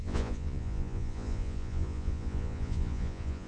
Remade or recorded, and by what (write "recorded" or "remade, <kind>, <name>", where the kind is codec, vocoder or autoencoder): remade, vocoder, Vocos